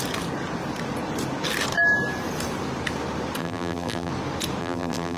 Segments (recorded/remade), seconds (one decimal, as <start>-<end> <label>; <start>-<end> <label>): 0.0-3.4 recorded; 3.4-4.1 remade; 4.1-4.6 recorded; 4.6-5.2 remade